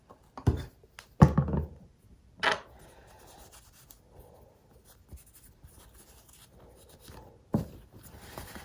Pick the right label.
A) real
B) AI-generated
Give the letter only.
A